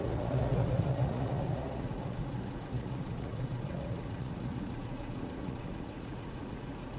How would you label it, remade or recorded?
remade